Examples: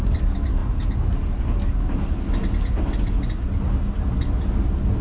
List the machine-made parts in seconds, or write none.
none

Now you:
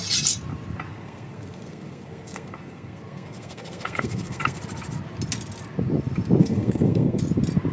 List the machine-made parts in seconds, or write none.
0.9-4.6 (codec, SNAC); 6.4-7.2

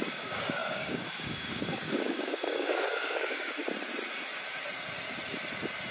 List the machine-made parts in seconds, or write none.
0.0-3.6 (codec, DAC)

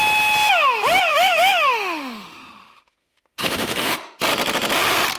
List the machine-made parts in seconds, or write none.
1.1-4.2 (autoencoder, DAC-VAE)

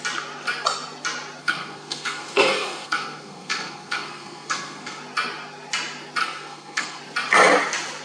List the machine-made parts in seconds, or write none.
1.4-5.0 (codec, SNAC); 6.2-7.0

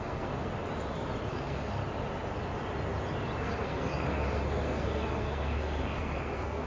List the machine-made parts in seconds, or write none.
0.0-0.5 (codec, SNAC); 1.3-1.8; 3.4-6.7

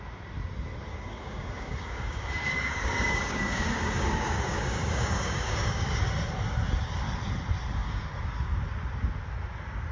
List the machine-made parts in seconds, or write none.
0.9-6.0 (codec, DAC); 7.8-8.6

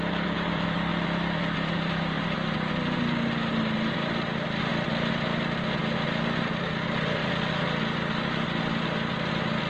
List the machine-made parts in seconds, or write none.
none